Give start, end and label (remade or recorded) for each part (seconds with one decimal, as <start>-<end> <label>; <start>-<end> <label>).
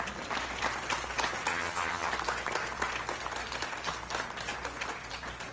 0.0-1.5 recorded; 1.5-2.1 remade; 2.1-5.5 recorded